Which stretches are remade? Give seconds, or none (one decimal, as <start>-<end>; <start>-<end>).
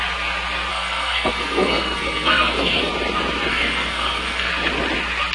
0.7-2.9; 3.5-4.5